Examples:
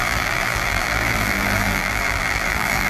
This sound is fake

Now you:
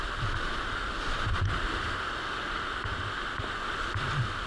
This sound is real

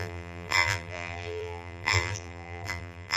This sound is fake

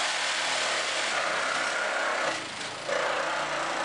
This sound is real